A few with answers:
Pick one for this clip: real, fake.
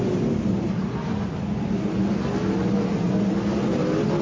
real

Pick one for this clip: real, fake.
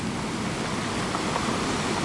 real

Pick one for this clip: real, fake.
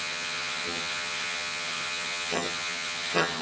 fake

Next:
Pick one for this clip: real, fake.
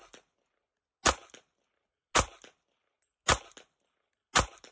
real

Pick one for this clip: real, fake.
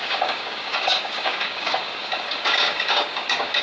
fake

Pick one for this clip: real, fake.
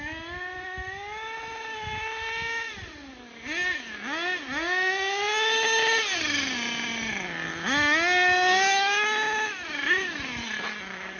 real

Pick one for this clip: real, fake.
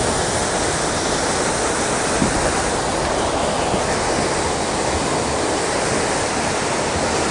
real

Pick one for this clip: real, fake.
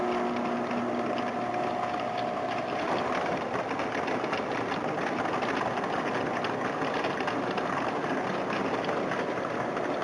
real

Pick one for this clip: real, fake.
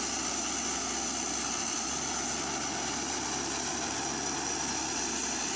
real